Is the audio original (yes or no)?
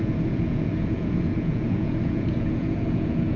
no